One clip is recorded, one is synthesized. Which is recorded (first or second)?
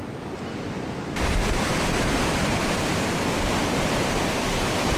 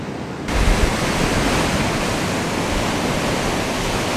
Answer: second